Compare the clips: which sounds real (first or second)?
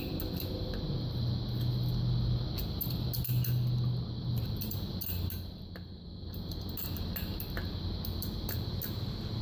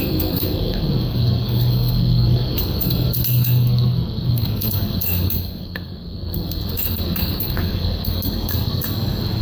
first